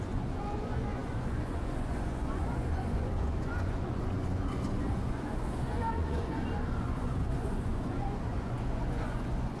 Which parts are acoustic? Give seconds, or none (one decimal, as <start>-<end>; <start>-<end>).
none